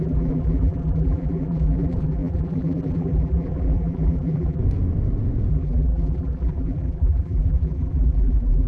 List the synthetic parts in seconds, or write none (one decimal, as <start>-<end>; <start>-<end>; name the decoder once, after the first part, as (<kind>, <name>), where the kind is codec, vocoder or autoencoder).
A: 0.0-4.6 (vocoder, BigVGAN v2); 5.5-8.7